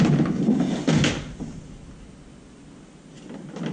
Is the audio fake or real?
real